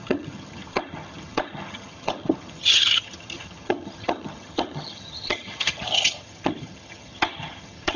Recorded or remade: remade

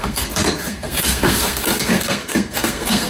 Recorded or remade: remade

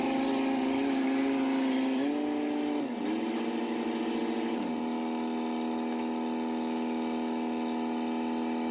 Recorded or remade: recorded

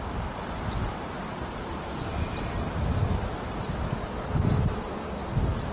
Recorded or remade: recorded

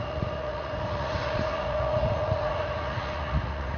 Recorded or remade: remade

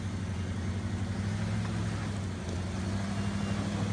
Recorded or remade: recorded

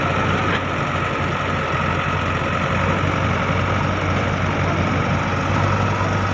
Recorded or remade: recorded